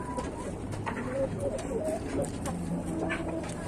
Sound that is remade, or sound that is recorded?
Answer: remade